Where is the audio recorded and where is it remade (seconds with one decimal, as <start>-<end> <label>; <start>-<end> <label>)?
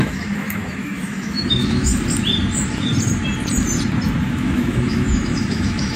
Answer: 0.0-1.9 remade; 1.9-4.3 recorded; 4.3-6.0 remade